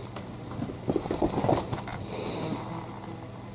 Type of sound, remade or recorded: recorded